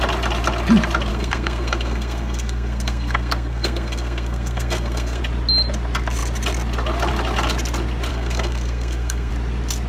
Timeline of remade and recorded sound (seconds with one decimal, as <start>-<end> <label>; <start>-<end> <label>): 0.0-1.1 recorded; 1.1-5.2 remade; 5.2-8.1 recorded; 8.1-9.3 remade; 9.3-9.9 recorded